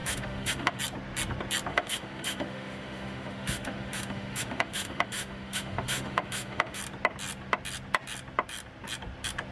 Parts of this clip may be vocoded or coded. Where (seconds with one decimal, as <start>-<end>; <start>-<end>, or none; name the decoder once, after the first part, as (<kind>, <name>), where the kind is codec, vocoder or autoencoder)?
0.0-0.8 (autoencoder, DAC-VAE); 1.7-6.8